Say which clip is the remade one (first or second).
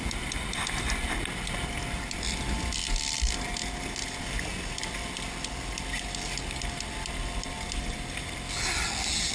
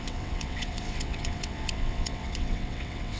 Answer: second